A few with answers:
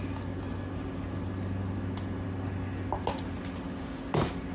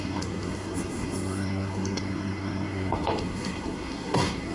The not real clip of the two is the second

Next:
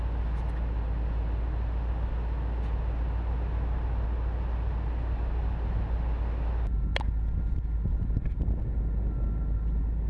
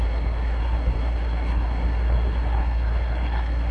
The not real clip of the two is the second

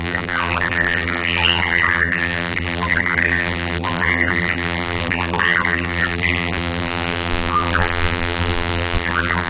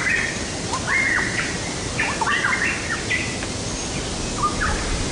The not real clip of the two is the first